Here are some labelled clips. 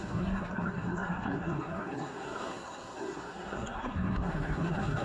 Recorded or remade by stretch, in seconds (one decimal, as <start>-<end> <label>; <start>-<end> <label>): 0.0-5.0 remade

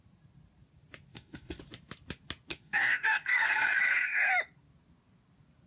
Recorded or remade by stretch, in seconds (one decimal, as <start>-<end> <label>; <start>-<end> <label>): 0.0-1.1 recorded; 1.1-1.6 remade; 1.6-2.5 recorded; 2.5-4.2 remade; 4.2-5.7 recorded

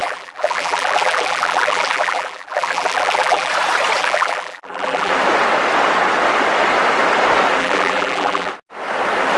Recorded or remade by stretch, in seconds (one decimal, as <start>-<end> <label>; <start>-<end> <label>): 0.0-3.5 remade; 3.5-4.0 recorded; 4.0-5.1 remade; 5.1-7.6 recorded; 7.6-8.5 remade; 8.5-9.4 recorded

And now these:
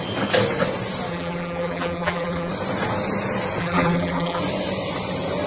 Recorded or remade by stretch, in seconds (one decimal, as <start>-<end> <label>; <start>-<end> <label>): 0.0-1.1 recorded; 1.1-2.5 remade; 2.5-3.6 recorded; 3.6-4.4 remade; 4.4-5.5 recorded